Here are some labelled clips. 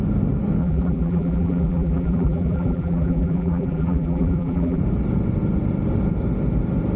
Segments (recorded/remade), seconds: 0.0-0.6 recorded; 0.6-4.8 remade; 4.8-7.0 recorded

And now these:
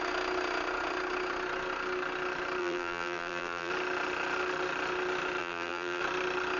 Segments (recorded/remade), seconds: 0.0-2.6 recorded; 2.6-3.7 remade; 3.7-5.4 recorded; 5.4-6.0 remade; 6.0-6.6 recorded

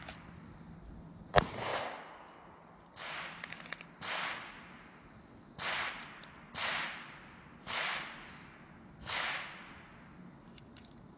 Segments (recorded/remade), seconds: 0.0-11.2 recorded

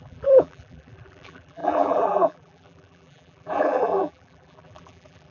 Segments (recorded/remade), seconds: 0.0-5.3 remade

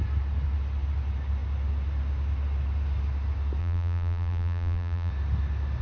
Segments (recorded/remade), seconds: 0.0-3.6 recorded; 3.6-5.1 remade; 5.1-5.8 recorded